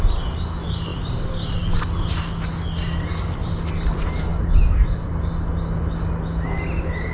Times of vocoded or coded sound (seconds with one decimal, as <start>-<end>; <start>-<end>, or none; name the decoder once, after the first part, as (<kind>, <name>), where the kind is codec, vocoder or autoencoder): 0.9-1.8 (vocoder, BigVGAN v2)